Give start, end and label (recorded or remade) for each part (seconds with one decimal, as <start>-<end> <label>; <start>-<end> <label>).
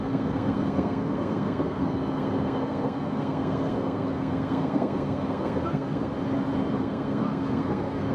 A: 0.0-6.1 remade; 6.1-6.8 recorded; 6.8-8.1 remade